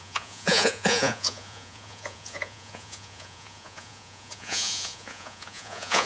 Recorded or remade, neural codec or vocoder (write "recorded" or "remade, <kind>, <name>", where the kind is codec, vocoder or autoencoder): remade, vocoder, Vocos